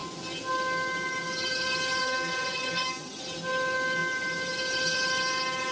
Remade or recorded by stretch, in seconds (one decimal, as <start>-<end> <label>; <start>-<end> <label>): 0.0-2.0 recorded; 2.0-3.2 remade; 3.2-5.7 recorded